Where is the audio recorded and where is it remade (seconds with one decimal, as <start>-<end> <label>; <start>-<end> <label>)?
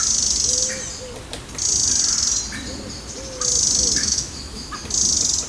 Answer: 0.0-4.0 recorded; 4.0-4.7 remade; 4.7-5.5 recorded